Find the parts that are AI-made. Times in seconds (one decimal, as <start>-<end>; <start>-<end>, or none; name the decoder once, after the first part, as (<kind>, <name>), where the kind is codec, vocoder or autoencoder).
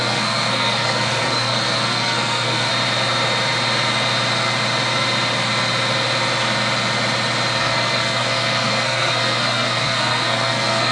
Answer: 0.0-2.7 (codec, SNAC); 7.6-10.9